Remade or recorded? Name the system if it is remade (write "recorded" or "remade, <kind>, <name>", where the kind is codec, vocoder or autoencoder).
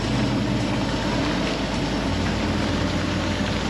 recorded